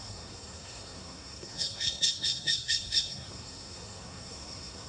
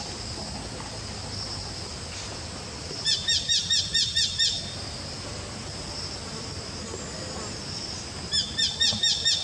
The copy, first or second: first